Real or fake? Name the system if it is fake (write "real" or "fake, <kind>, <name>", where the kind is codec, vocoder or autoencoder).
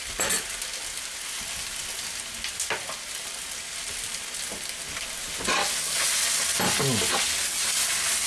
real